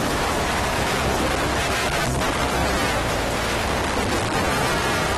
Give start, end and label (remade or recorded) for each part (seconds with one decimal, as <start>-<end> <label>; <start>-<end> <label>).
0.0-0.9 remade; 0.9-2.6 recorded; 2.6-3.6 remade; 3.6-5.2 recorded